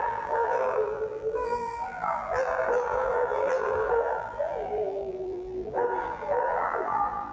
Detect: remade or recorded remade